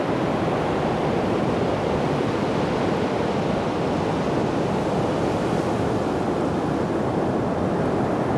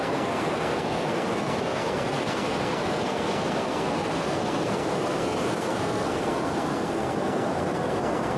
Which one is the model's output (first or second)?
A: second